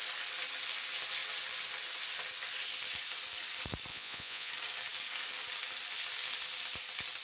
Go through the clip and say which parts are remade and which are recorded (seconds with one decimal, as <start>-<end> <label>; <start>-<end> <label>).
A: 0.0-3.9 recorded; 3.9-4.5 remade; 4.5-7.2 recorded